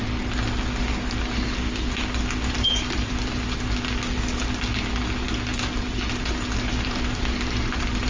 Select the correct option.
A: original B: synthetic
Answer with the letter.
A